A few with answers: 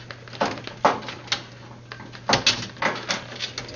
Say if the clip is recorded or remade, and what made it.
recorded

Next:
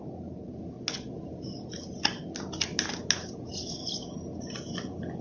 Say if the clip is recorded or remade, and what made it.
recorded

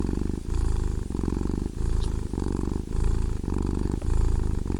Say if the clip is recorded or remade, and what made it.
remade, vocoder, BigVGAN v2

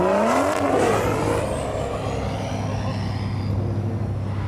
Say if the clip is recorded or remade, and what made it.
recorded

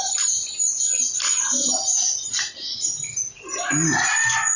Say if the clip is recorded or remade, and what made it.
recorded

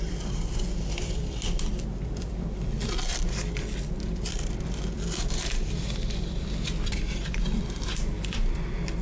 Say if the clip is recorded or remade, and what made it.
remade, vocoder, BigVGAN v2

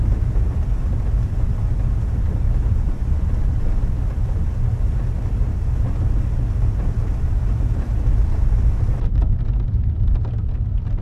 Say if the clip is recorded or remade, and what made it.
recorded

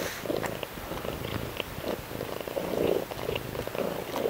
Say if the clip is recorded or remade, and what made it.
recorded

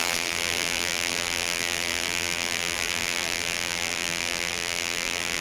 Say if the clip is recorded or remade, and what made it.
remade, vocoder, BigVGAN v2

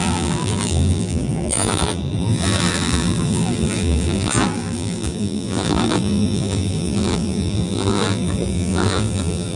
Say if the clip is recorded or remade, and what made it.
remade, vocoder, BigVGAN v2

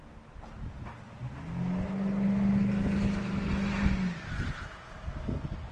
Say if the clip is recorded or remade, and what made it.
recorded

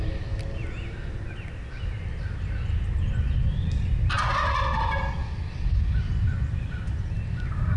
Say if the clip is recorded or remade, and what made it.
recorded